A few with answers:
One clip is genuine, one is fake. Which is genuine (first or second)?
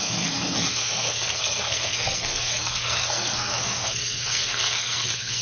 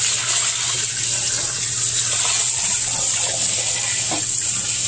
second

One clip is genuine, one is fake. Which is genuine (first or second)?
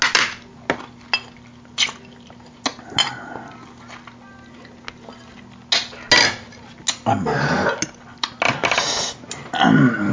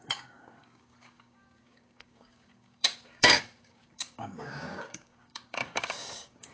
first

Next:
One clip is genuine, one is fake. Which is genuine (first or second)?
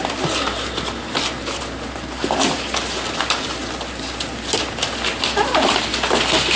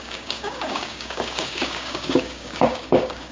first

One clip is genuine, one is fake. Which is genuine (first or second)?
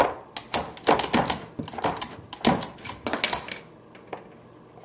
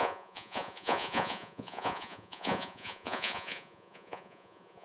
first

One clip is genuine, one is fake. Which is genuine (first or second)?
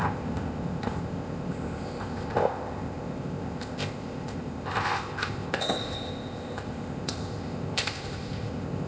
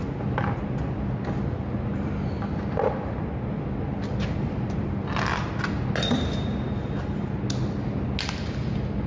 second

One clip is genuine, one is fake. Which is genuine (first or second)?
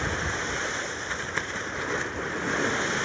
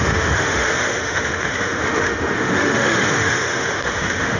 first